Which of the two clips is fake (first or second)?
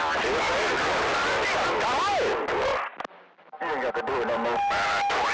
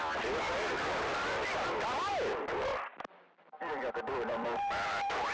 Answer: second